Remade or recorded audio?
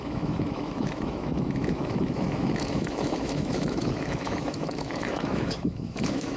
remade